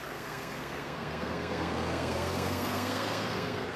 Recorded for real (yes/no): no